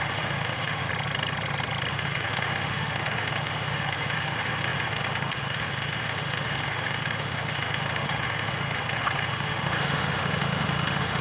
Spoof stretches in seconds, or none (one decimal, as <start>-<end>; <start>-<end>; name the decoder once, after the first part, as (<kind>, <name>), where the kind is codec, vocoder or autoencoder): 0.0-0.9 (autoencoder, DAC-VAE); 1.9-11.2